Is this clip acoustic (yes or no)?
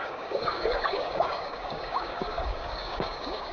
no